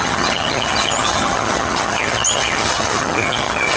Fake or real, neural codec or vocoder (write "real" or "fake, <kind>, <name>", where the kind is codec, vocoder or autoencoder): fake, vocoder, HiFi-GAN